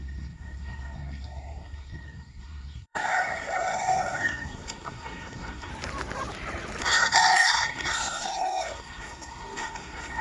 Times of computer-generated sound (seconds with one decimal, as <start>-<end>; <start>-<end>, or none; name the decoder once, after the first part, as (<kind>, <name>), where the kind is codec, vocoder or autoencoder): 0.0-5.7 (codec, SNAC); 6.8-10.2